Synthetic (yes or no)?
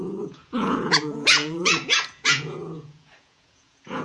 yes